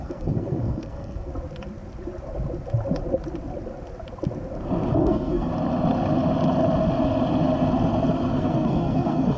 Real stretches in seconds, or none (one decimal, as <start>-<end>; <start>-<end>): 1.3-5.0; 5.5-8.3